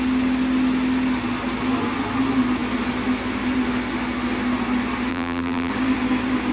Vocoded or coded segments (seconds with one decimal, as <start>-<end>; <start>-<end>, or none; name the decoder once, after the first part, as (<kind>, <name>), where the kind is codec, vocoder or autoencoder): 5.1-5.7 (vocoder, BigVGAN v2)